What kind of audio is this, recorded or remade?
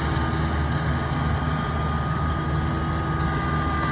recorded